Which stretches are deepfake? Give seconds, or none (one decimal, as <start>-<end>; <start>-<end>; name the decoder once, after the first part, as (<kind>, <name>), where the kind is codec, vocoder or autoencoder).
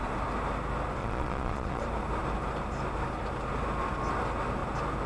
1.0-1.8 (vocoder, Vocos)